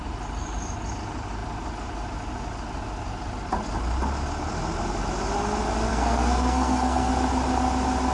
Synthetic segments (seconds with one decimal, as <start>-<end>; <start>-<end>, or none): 5.9-7.1